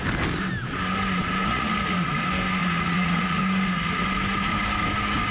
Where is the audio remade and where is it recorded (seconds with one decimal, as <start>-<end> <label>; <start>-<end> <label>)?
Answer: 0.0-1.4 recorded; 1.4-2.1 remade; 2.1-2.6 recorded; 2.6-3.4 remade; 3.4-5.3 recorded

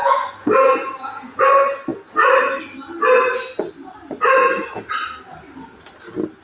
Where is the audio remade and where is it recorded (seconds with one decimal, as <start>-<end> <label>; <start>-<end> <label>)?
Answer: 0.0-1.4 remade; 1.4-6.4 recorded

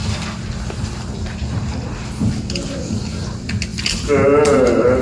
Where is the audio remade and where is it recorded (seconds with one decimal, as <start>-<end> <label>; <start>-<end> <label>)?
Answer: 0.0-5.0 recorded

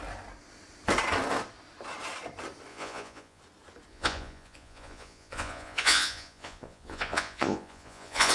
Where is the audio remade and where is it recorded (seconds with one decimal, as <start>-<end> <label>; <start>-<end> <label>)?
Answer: 0.0-2.7 recorded; 2.7-3.4 remade; 3.4-3.9 recorded; 3.9-8.3 remade